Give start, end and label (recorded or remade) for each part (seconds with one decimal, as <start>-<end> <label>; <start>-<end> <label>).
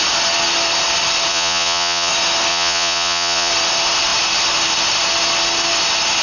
0.0-1.3 recorded; 1.3-2.1 remade; 2.1-2.5 recorded; 2.5-3.5 remade; 3.5-6.2 recorded